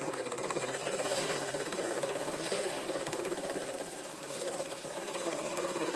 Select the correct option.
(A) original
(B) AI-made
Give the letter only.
B